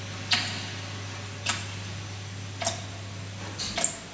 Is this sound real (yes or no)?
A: yes